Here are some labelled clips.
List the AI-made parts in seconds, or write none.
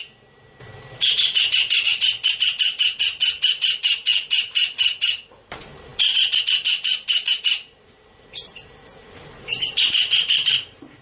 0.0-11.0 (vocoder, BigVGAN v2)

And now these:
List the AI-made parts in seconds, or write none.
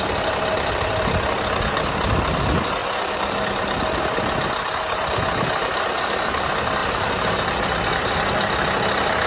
2.8-4.0 (vocoder, BigVGAN v2); 6.8-7.3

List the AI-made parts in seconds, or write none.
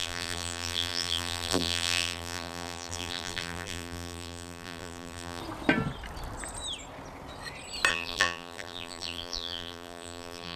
0.0-5.4 (vocoder, BigVGAN v2); 7.9-10.6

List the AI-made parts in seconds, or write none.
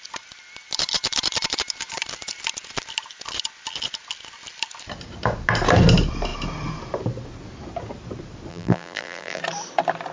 8.5-9.4 (vocoder, BigVGAN v2)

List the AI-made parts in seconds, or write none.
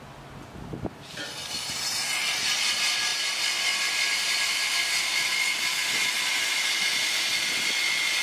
2.2-2.7 (vocoder, BigVGAN v2); 3.1-3.9